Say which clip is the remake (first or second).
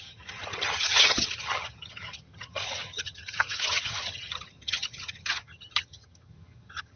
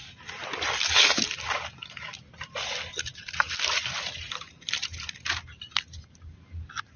first